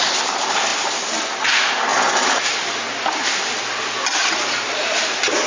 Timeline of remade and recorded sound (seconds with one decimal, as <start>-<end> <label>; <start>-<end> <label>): 0.0-5.5 recorded